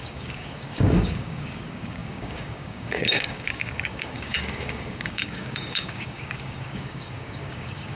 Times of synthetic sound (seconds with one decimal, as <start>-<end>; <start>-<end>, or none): 0.0-8.0